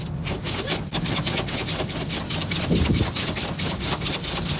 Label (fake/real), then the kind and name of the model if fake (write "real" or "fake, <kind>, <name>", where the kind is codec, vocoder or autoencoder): fake, vocoder, BigVGAN v2